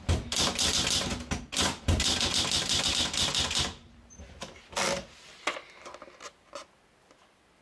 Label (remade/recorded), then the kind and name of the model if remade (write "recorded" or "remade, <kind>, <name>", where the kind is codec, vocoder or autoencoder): recorded